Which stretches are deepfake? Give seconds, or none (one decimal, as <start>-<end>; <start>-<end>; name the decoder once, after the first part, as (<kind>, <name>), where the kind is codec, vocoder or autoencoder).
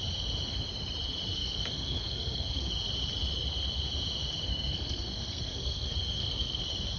1.4-2.7 (codec, SNAC); 4.5-6.6